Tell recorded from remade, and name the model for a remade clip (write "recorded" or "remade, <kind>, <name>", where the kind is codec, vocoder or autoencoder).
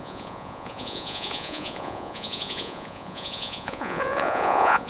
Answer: remade, vocoder, Vocos